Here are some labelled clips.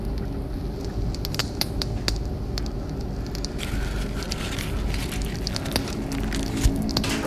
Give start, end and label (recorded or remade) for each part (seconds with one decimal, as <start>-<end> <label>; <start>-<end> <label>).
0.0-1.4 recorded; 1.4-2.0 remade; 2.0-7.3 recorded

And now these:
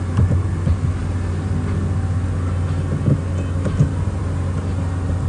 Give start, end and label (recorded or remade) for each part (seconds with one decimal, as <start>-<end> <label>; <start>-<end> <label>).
0.0-5.3 recorded

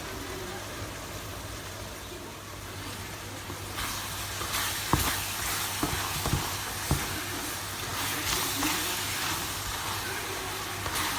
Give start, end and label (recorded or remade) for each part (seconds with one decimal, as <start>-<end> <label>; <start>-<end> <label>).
0.0-11.2 recorded